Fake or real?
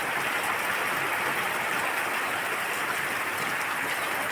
real